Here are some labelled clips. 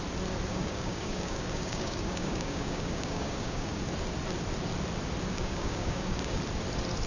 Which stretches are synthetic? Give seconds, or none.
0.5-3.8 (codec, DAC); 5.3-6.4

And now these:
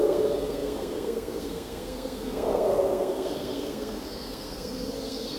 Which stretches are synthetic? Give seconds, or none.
0.0-5.4 (codec, SNAC)

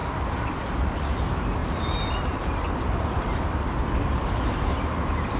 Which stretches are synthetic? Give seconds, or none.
0.0-0.6 (vocoder, BigVGAN v2); 1.6-3.4

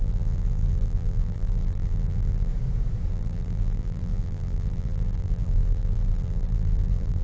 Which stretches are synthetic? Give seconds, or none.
0.0-2.5 (vocoder, BigVGAN v2); 3.1-7.2

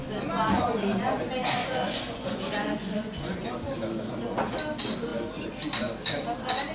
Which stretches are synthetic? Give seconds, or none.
0.5-1.2 (vocoder, Vocos); 1.6-3.6

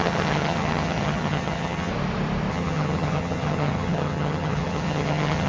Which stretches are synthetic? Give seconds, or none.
0.0-1.9 (vocoder, HiFi-GAN); 2.5-5.5

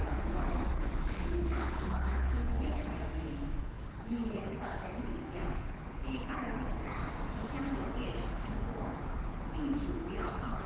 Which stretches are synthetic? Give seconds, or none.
0.0-2.9 (codec, HILCodec); 3.6-7.0; 8.3-10.7